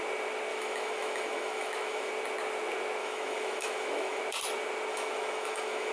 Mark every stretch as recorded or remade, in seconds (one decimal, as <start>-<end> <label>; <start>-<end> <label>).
0.0-0.5 recorded; 0.5-2.1 remade; 2.1-3.0 recorded; 3.0-4.2 remade; 4.2-4.9 recorded; 4.9-5.9 remade